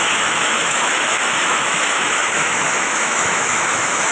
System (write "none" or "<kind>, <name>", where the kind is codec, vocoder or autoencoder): autoencoder, DAC-VAE